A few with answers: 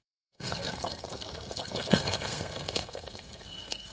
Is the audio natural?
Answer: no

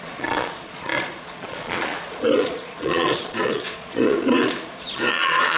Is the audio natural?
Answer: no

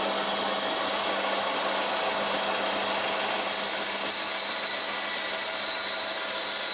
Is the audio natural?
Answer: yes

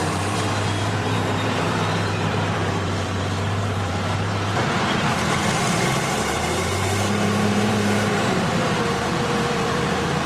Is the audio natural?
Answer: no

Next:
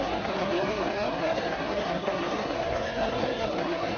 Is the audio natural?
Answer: no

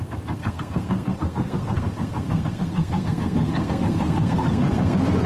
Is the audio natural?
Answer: no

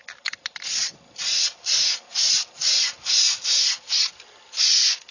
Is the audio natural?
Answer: yes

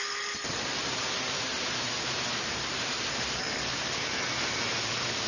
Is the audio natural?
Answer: yes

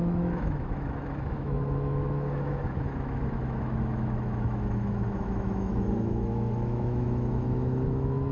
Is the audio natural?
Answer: no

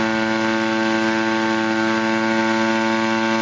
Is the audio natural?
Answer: yes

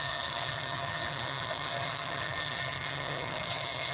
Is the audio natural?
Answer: no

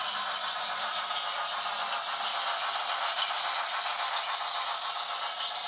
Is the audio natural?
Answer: yes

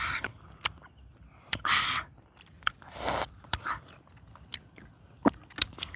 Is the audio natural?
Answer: yes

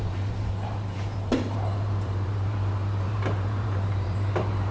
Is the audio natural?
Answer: no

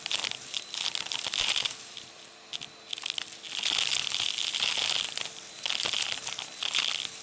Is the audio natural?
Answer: yes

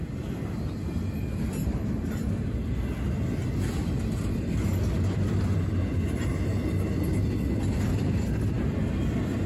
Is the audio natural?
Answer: yes